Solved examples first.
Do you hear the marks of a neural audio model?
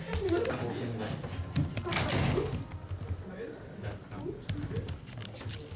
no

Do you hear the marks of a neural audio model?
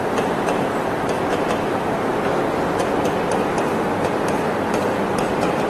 no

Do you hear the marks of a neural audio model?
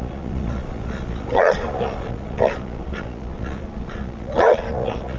yes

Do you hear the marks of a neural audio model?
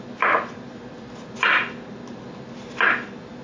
no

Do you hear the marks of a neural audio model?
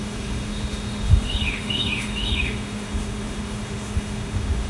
yes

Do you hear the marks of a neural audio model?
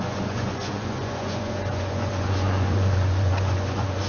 yes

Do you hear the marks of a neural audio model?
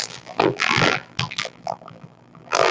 yes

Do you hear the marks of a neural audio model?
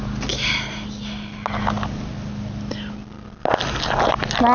no